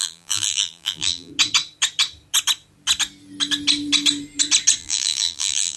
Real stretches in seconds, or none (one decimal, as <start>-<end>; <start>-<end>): 1.3-4.8